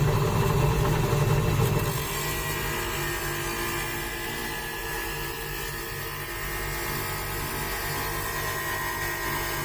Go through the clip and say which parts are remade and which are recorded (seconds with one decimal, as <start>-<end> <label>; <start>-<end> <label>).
0.0-9.6 recorded